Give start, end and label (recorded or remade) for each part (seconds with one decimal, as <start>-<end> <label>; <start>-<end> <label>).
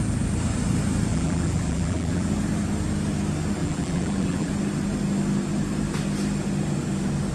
0.0-1.1 recorded; 1.1-2.3 remade; 2.3-3.6 recorded; 3.6-4.5 remade; 4.5-7.3 recorded